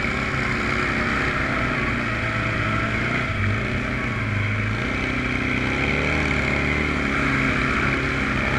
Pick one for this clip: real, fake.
real